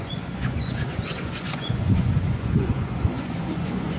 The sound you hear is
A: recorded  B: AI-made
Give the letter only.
B